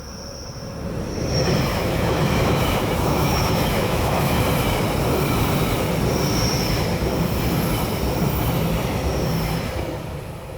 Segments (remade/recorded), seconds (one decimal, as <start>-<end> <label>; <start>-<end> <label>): 0.0-1.7 recorded; 1.7-4.4 remade; 4.4-10.6 recorded